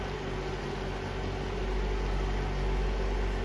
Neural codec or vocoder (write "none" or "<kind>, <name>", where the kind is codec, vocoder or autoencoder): none